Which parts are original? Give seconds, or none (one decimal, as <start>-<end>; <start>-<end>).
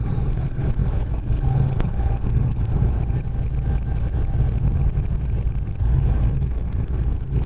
2.9-5.8